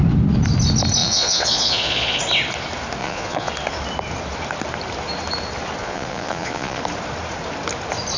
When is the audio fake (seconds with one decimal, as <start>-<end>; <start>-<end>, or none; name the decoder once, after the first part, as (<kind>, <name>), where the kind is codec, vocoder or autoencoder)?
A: 1.0-2.2 (vocoder, Vocos); 3.0-3.5; 5.8-6.8